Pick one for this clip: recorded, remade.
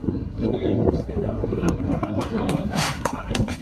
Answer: remade